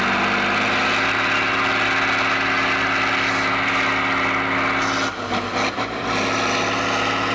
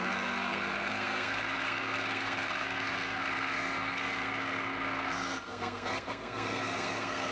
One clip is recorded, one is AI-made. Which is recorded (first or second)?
first